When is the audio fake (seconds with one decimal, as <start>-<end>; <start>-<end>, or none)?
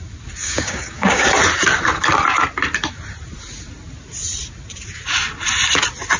0.4-1.3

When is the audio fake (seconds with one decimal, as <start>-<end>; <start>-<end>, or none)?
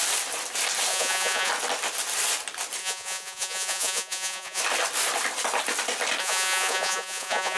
0.9-1.5; 2.8-4.6; 6.2-7.6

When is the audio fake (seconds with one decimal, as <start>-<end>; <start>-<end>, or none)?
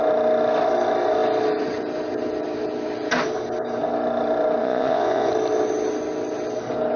4.6-5.3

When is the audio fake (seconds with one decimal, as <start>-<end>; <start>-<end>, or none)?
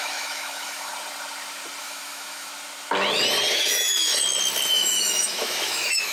0.0-0.9; 1.8-2.5; 3.5-4.1; 4.7-6.1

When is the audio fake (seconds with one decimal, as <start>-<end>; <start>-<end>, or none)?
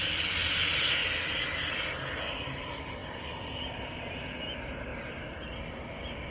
1.0-2.2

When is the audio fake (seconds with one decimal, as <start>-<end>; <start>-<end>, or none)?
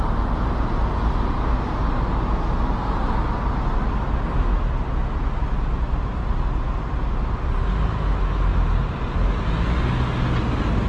8.5-9.4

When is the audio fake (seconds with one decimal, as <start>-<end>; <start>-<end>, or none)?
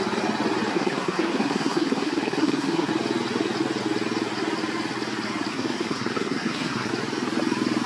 0.7-2.9; 5.5-6.9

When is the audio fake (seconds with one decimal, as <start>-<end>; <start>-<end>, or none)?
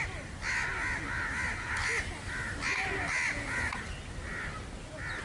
none